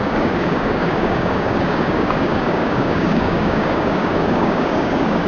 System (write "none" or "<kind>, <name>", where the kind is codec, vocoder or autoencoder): codec, DAC